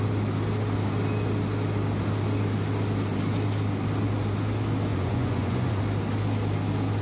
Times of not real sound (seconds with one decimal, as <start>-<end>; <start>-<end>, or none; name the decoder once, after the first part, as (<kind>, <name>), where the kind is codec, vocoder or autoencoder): 4.9-5.8 (vocoder, Vocos)